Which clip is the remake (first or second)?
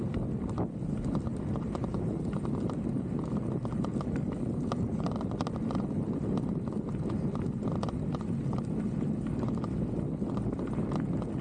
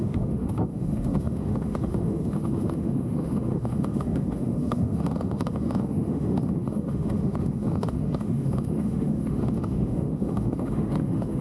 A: second